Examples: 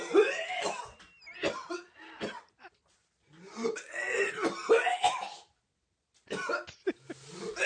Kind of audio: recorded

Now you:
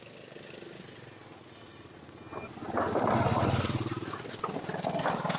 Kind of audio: recorded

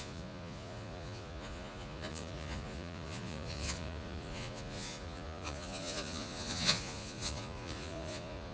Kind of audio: remade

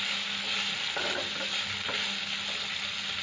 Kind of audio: recorded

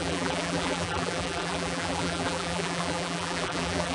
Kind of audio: remade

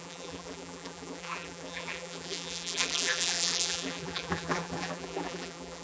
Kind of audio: remade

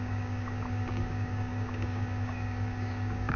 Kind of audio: remade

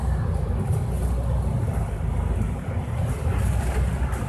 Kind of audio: recorded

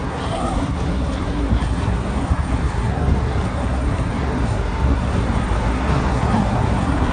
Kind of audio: remade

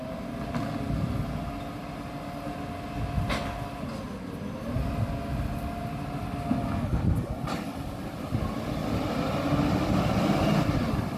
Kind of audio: recorded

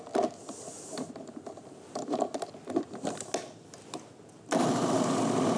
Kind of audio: recorded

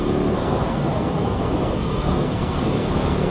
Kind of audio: remade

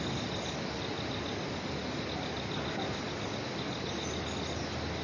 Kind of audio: recorded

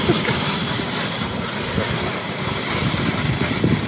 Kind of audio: remade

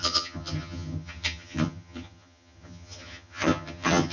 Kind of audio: remade